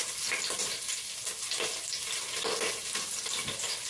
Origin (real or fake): real